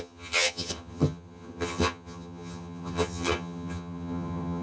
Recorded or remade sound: remade